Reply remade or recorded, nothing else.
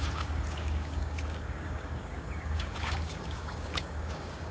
remade